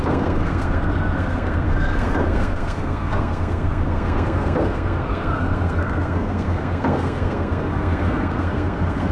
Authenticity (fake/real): fake